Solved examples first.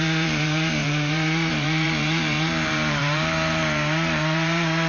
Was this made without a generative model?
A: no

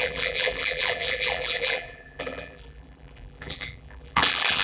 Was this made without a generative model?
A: no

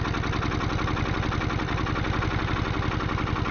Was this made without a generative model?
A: yes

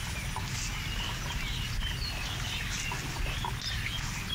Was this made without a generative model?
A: yes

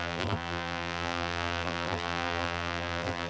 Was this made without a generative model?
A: no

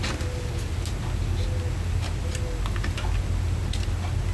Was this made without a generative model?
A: yes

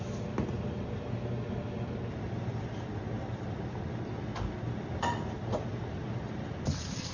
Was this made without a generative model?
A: yes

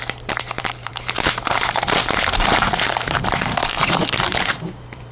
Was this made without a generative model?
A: no